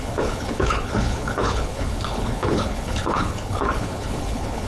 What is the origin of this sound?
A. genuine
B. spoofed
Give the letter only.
B